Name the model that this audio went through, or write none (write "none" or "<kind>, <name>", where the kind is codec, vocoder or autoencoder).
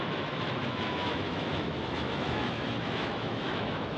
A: autoencoder, DAC-VAE